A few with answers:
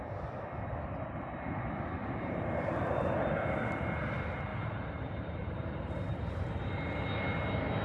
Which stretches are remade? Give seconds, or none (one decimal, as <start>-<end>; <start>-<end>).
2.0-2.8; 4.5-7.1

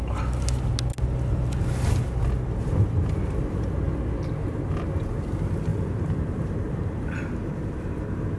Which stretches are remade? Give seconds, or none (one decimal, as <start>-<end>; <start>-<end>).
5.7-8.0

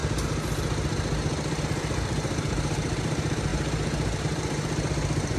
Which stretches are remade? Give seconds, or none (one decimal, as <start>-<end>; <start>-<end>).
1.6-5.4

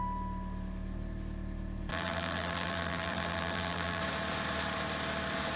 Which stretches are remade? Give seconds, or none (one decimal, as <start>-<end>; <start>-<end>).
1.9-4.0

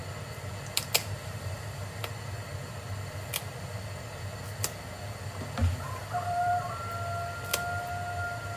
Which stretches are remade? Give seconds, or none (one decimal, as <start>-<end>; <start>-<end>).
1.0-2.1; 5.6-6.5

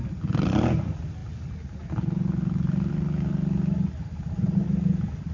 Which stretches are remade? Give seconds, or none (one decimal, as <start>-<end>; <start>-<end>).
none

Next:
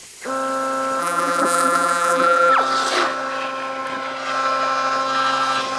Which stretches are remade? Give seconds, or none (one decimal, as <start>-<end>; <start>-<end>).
1.0-2.5

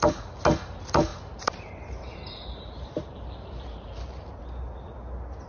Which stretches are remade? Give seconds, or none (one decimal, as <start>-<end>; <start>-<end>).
1.1-4.4